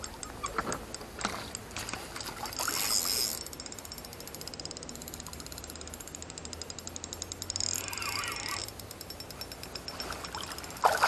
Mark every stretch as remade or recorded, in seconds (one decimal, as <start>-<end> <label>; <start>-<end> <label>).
0.0-11.1 recorded